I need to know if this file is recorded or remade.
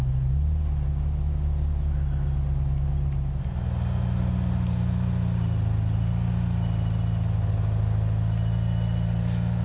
recorded